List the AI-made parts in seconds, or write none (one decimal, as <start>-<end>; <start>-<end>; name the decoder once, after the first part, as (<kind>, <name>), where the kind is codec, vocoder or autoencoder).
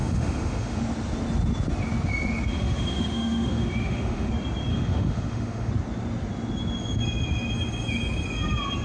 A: 0.0-0.8 (autoencoder, DAC-VAE); 2.5-4.3; 4.7-5.7